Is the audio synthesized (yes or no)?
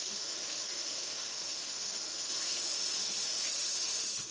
yes